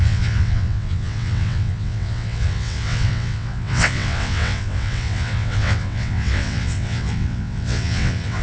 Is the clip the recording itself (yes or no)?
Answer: no